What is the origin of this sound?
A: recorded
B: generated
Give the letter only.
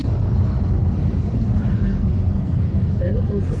B